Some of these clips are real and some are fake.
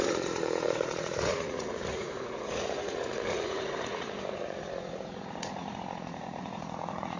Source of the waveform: fake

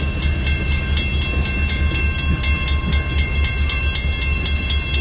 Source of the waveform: real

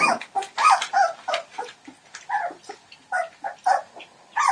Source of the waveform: real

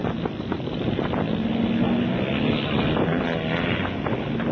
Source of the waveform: real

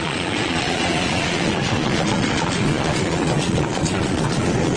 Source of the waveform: fake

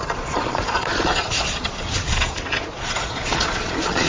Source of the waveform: fake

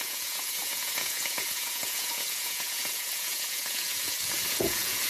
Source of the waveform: fake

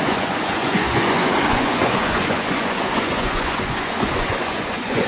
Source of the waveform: fake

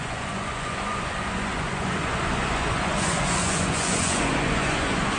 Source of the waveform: fake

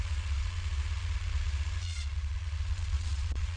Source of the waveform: fake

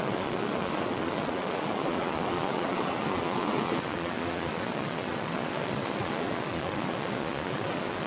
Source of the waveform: fake